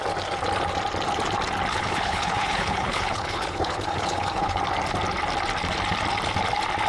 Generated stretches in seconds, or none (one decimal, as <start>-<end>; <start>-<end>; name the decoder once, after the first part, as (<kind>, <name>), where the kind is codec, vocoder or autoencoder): 1.7-4.6 (codec, HILCodec)